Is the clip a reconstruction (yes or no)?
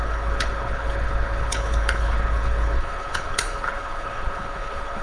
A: yes